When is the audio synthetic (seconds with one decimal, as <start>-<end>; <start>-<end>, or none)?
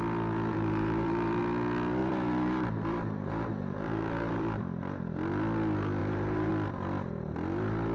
0.5-1.4; 2.0-4.6; 6.0-6.5